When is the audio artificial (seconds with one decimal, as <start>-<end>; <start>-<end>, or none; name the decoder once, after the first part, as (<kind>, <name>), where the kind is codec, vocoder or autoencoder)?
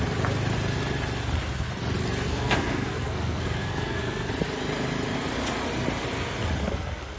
2.3-4.3 (codec, SNAC); 6.6-7.2